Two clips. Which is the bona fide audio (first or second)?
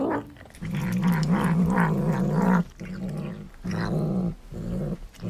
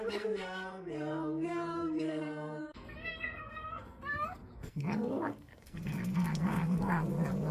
first